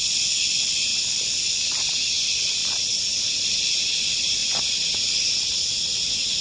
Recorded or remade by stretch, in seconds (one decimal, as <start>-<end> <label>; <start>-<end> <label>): 0.0-4.4 recorded; 4.4-5.1 remade; 5.1-6.4 recorded